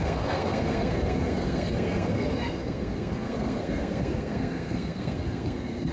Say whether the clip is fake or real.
fake